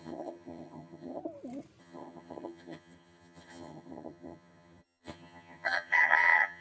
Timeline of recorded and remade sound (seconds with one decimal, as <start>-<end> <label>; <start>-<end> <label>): 0.0-1.2 remade; 1.2-1.8 recorded; 1.8-6.6 remade